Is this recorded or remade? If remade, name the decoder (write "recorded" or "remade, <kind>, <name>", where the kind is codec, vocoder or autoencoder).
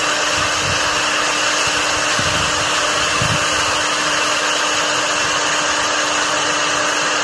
recorded